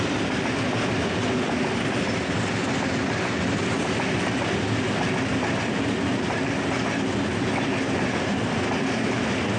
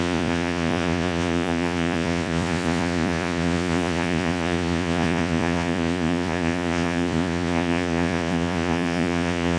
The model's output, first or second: second